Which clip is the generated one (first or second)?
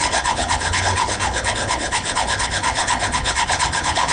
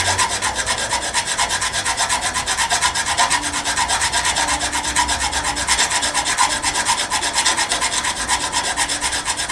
first